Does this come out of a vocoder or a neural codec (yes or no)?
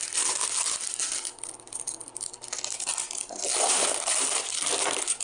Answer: no